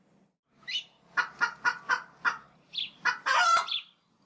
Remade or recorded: recorded